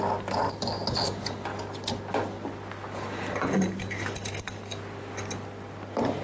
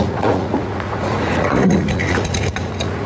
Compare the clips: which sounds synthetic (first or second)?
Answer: second